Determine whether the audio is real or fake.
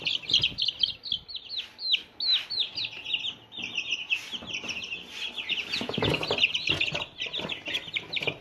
real